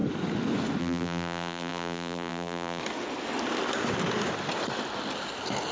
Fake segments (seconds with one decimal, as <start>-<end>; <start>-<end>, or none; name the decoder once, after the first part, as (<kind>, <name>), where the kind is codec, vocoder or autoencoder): 0.8-2.8 (vocoder, BigVGAN v2)